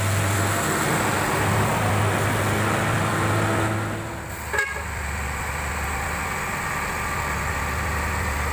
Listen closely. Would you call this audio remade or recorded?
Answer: recorded